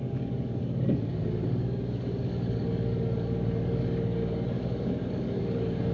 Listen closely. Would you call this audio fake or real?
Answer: fake